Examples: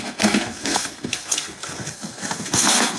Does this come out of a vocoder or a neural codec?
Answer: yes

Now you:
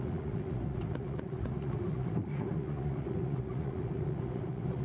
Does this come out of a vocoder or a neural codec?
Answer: yes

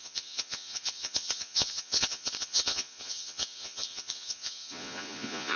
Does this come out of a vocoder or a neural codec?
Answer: yes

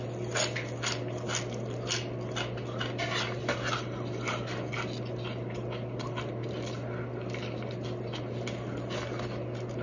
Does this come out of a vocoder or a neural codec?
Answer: no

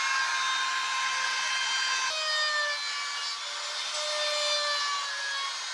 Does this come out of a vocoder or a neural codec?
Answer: no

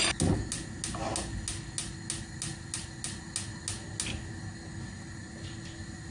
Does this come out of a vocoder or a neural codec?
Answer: no